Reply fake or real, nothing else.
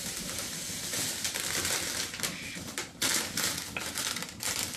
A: real